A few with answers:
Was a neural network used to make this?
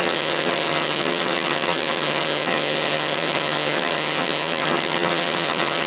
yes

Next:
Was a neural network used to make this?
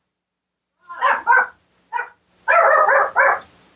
no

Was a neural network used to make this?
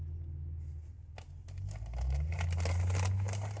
no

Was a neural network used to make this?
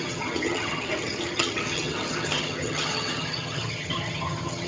yes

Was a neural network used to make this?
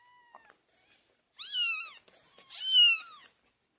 no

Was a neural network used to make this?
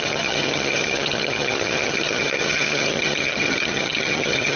yes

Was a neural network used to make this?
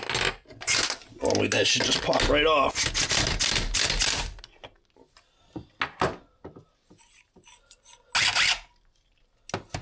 no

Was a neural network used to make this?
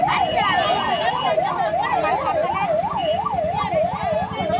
no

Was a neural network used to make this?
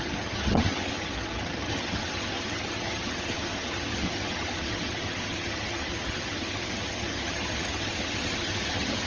yes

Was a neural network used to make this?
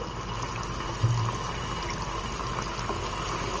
no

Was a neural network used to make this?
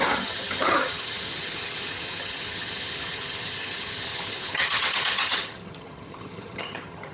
yes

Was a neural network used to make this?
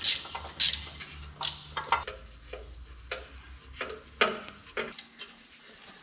no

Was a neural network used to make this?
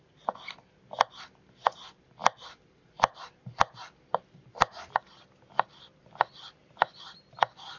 no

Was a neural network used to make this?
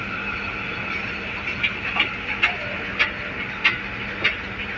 no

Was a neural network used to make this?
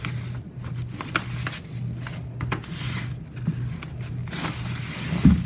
no